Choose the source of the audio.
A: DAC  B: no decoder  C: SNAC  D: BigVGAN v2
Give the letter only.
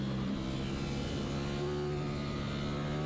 B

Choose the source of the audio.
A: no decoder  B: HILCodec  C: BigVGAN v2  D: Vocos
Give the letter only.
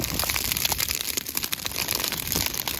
C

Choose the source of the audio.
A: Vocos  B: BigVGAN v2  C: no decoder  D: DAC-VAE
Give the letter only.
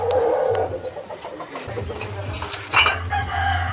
C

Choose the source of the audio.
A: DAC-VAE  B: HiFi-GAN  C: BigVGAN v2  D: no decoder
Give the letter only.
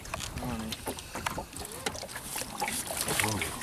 D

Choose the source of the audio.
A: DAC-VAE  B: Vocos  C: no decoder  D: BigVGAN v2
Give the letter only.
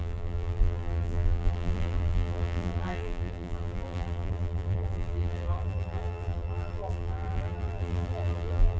D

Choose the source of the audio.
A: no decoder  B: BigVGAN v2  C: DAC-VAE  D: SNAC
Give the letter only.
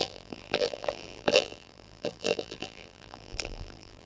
B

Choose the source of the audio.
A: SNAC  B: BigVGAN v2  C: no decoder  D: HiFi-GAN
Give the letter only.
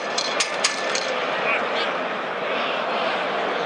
B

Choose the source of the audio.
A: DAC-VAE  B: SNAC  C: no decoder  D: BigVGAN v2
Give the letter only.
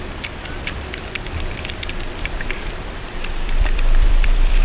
D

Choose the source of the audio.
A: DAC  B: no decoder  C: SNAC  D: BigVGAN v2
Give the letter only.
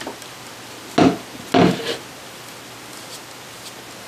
B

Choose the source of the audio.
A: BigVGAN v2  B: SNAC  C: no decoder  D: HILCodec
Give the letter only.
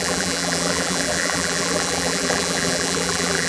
A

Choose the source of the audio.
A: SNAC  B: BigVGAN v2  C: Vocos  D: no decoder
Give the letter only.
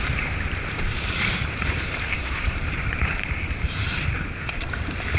B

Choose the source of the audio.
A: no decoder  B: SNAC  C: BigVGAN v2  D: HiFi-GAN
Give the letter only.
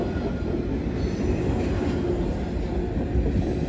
A